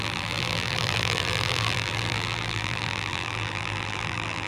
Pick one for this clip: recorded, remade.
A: remade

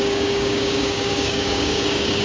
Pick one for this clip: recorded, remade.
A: remade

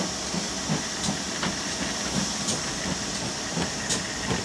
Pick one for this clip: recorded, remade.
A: remade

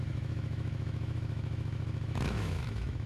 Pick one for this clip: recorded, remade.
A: remade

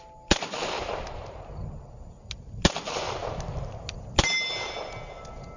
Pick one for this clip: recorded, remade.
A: recorded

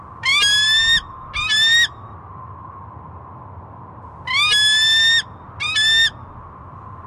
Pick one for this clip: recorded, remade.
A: recorded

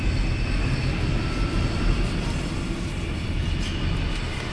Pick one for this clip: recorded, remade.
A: recorded